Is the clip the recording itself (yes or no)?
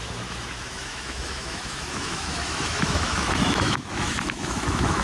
no